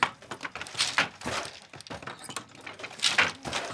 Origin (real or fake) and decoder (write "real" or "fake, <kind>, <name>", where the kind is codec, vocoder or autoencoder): real